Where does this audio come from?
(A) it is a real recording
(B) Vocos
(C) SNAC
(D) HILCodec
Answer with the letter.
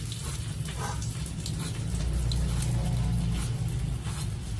A